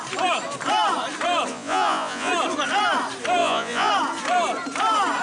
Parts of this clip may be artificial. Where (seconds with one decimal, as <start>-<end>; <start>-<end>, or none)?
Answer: 1.5-2.3; 3.4-3.9